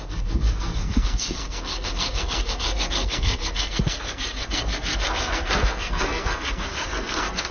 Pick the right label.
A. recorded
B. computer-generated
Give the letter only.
B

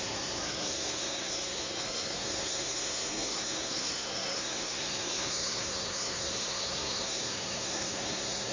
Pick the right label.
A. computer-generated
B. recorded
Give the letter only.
A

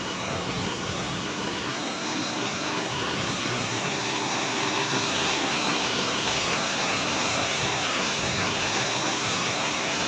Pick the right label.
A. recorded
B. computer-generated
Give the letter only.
B